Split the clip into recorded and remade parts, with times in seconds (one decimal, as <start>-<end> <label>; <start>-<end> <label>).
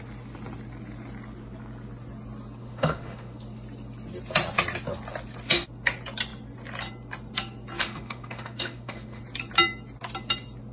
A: 0.0-2.6 recorded; 2.6-3.4 remade; 3.4-7.8 recorded; 7.8-9.2 remade; 9.2-10.7 recorded